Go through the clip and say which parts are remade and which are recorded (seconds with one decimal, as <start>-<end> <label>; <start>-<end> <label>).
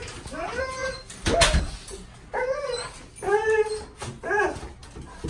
0.0-5.3 recorded